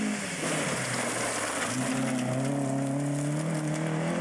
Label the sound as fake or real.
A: real